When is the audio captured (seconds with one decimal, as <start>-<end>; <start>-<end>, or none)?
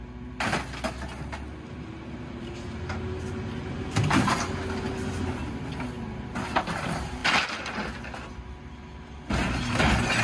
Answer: 0.0-10.2